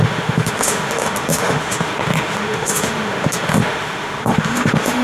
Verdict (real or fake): fake